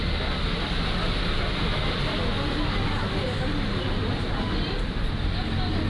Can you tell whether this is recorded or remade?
recorded